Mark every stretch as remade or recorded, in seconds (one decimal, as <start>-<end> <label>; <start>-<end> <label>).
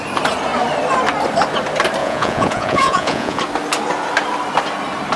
0.0-2.0 recorded; 2.0-3.4 remade; 3.4-5.2 recorded